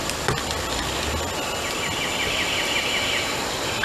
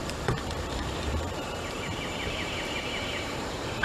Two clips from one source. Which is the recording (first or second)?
first